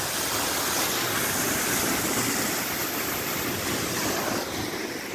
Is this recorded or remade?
recorded